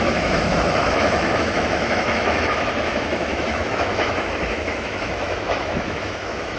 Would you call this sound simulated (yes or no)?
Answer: yes